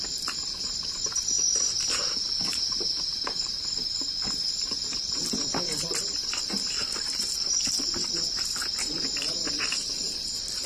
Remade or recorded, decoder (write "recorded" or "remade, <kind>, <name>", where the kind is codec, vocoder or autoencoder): remade, vocoder, BigVGAN v2